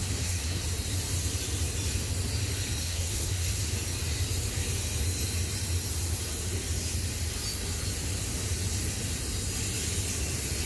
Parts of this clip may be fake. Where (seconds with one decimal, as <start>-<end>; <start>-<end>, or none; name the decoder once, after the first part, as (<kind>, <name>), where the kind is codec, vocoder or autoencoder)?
0.0-0.6 (codec, SNAC); 2.8-3.7